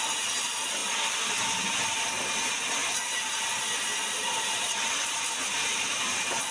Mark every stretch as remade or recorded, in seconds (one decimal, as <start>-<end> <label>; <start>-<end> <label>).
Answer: 0.0-2.8 recorded; 2.8-6.5 remade